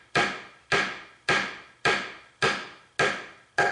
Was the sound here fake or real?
real